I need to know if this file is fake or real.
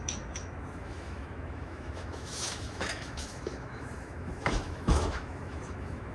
fake